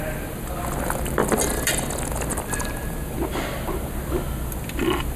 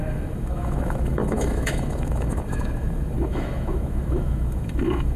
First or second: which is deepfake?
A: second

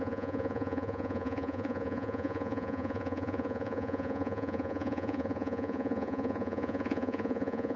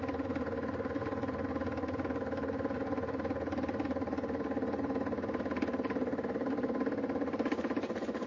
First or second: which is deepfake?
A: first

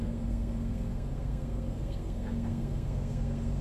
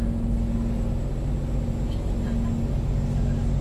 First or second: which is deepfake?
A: first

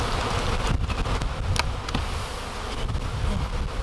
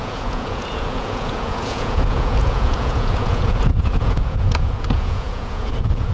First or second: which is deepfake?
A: second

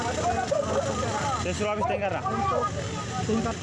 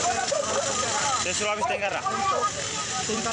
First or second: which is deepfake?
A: second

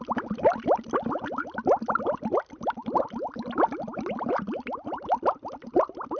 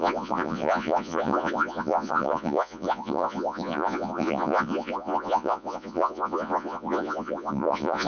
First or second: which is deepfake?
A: second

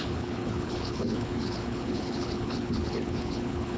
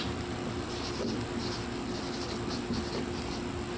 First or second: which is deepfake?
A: first